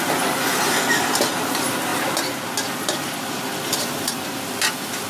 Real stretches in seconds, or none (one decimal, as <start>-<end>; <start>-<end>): 0.0-5.1